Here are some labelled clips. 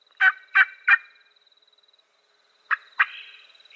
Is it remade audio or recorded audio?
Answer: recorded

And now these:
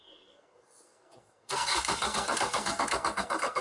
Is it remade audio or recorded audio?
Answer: remade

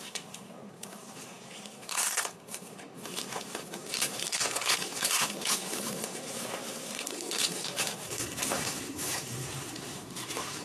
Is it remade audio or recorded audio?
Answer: remade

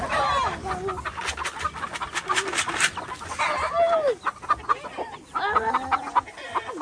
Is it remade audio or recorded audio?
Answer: recorded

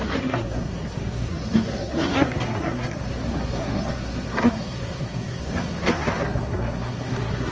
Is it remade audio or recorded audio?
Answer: remade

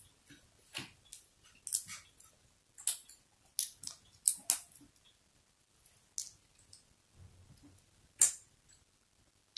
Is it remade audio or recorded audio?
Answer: recorded